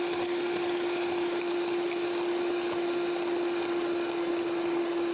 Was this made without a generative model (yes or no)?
yes